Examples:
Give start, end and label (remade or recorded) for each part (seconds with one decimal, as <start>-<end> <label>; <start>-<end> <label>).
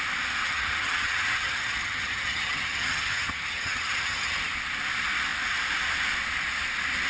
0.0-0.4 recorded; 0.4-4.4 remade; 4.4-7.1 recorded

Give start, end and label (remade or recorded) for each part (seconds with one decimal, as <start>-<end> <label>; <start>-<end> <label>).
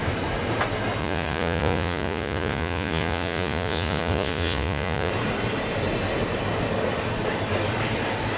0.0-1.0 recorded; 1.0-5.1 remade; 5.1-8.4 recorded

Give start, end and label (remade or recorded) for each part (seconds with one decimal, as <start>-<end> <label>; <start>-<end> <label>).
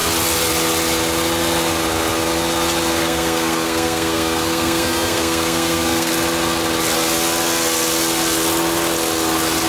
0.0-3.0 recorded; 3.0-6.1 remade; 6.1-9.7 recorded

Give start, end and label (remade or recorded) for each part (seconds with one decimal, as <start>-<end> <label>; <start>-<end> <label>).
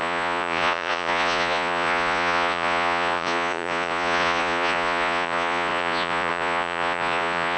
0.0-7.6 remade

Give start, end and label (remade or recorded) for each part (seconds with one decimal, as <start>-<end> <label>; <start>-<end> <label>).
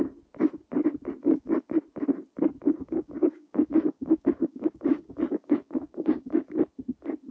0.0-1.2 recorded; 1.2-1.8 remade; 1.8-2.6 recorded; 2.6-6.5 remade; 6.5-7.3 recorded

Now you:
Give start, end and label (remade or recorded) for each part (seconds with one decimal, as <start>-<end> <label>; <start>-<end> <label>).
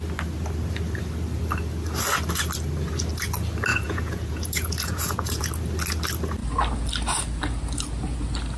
0.0-3.7 recorded; 3.7-5.4 remade; 5.4-8.6 recorded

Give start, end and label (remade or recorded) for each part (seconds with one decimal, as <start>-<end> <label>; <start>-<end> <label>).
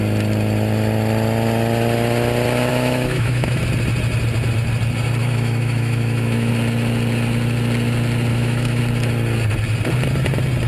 0.0-2.7 recorded; 2.7-3.6 remade; 3.6-5.2 recorded; 5.2-6.5 remade; 6.5-8.3 recorded; 8.3-8.8 remade; 8.8-10.7 recorded